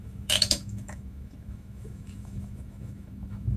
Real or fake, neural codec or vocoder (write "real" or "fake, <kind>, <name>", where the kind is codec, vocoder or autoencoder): fake, autoencoder, DAC-VAE